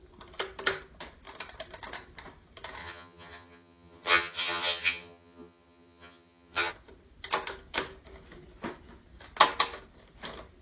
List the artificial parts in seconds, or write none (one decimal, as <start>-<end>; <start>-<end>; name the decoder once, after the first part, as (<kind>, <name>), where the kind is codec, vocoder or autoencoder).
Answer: 2.8-6.7 (vocoder, HiFi-GAN)